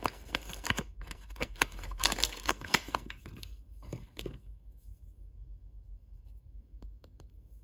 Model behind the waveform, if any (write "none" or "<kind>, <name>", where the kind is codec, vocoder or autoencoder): codec, SNAC